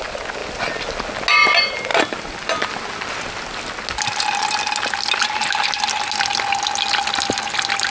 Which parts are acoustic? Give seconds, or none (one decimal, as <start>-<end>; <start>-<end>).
0.0-7.9